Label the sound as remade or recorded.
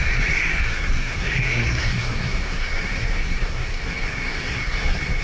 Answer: remade